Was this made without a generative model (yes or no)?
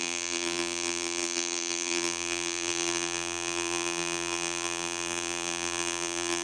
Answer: no